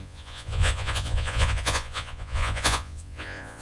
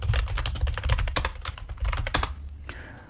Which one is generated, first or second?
first